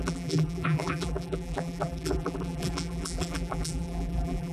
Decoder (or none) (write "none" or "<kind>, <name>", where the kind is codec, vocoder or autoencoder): vocoder, BigVGAN v2